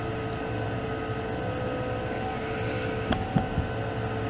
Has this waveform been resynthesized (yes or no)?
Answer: no